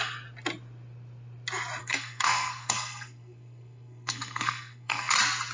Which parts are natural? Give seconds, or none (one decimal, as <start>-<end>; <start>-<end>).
0.0-1.8; 5.1-5.5